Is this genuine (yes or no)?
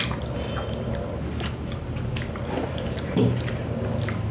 yes